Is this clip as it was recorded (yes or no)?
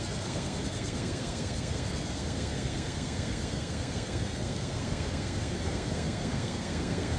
no